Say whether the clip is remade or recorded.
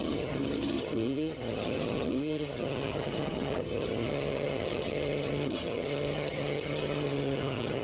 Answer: remade